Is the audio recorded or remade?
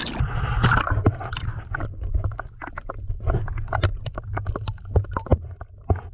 recorded